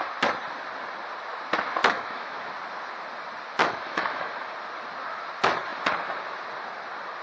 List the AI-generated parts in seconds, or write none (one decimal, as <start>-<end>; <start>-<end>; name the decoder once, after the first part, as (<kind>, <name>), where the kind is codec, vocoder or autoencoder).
1.8-2.5 (autoencoder, DAC-VAE); 3.6-4.3